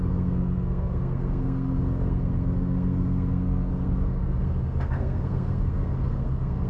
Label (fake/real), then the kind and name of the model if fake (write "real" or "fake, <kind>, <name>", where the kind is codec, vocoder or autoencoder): fake, codec, SNAC